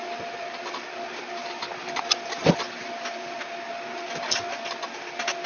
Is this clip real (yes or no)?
yes